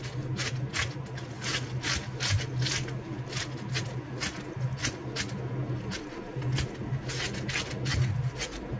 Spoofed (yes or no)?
no